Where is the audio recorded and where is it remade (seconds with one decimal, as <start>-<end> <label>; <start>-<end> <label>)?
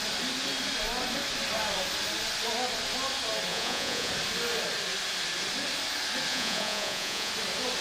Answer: 0.0-3.5 recorded; 3.5-4.1 remade; 4.1-6.3 recorded; 6.3-7.3 remade; 7.3-7.8 recorded